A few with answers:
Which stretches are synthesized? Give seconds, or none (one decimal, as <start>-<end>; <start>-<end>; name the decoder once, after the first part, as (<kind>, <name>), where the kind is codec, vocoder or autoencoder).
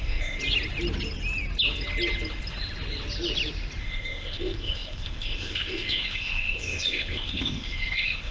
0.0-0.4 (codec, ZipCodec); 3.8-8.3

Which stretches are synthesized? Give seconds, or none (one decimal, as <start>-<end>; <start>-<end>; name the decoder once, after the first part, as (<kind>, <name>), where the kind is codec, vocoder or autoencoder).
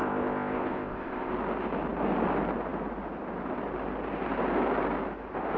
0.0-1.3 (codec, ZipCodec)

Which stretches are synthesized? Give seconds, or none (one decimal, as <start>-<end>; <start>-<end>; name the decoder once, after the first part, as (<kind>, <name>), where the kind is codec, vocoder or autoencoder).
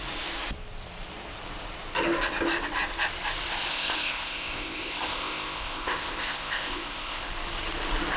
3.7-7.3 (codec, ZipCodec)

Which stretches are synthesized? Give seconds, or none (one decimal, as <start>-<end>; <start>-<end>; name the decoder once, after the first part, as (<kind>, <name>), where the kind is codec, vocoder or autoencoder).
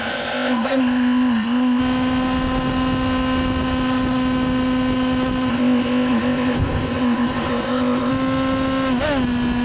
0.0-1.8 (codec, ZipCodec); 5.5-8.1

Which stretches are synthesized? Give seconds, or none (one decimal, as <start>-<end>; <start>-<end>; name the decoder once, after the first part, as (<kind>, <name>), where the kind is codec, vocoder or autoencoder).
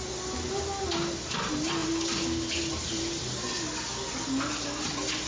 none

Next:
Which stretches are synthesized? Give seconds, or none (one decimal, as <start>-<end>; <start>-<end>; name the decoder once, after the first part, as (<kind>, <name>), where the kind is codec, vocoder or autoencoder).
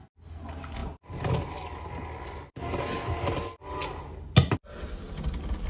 none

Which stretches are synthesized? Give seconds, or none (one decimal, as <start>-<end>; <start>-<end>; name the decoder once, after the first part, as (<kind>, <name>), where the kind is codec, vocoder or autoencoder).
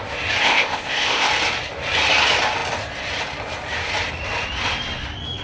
0.4-1.3 (codec, ZipCodec)